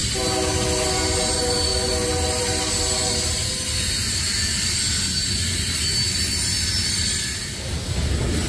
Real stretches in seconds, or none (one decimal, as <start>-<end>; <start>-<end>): 0.0-8.5